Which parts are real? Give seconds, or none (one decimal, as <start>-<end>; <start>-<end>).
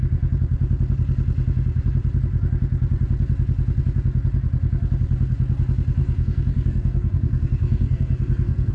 0.0-6.0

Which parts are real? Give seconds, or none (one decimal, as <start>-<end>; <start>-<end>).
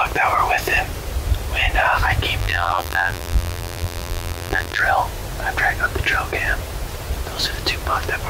0.0-2.4; 4.8-8.3